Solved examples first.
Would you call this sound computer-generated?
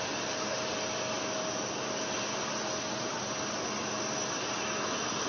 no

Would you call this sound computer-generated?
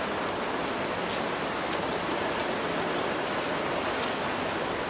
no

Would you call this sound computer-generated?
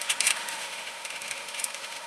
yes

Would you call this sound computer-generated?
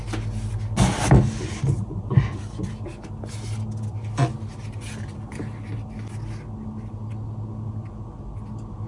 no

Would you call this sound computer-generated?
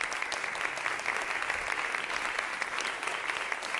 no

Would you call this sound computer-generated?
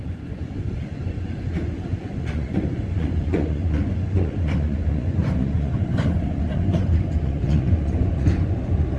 yes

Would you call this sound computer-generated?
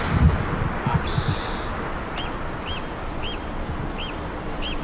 no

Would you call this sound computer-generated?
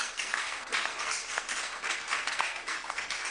yes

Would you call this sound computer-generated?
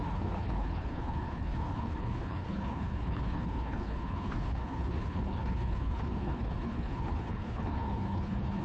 yes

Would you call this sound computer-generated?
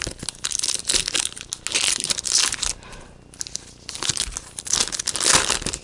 no